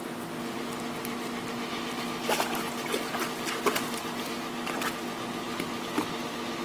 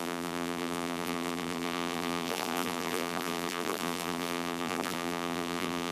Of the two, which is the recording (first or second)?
first